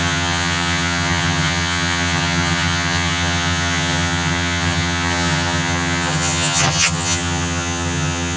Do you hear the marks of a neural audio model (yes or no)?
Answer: yes